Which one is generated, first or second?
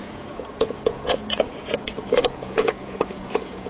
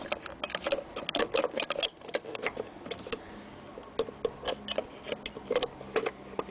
first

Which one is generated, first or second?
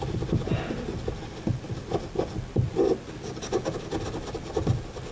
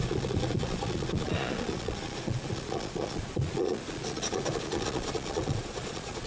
second